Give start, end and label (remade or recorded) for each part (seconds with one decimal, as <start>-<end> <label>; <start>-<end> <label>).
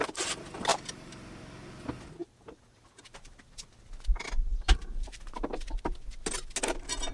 0.0-0.7 recorded; 0.7-1.4 remade; 1.4-2.2 recorded; 2.2-3.6 remade; 3.6-4.5 recorded; 4.5-5.7 remade; 5.7-7.1 recorded